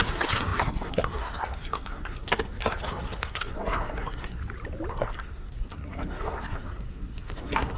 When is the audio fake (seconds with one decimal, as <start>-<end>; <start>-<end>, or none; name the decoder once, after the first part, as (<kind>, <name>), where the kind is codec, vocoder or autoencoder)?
0.0-4.4 (codec, SNAC); 4.9-7.8